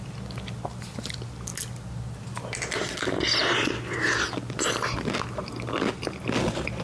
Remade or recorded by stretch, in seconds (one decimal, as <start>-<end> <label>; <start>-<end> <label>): 0.0-6.8 recorded